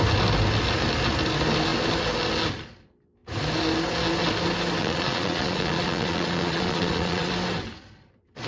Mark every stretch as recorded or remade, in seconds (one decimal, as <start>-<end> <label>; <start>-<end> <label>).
0.0-4.8 recorded; 4.8-7.3 remade; 7.3-8.5 recorded